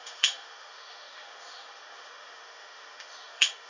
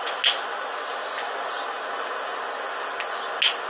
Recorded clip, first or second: second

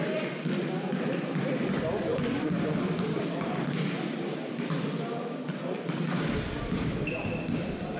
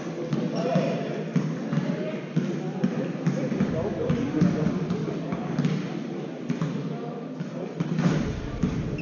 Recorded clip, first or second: second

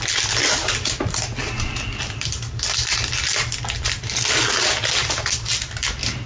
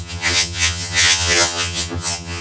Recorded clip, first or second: first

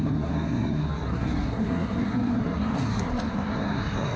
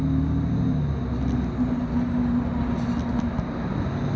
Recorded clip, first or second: second